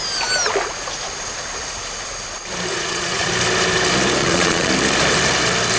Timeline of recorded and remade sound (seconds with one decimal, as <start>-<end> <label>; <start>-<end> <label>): 0.0-2.7 recorded; 2.7-3.3 remade; 3.3-4.2 recorded; 4.2-4.7 remade; 4.7-5.8 recorded